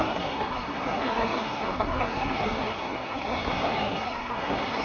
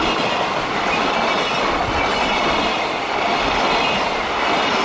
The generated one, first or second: first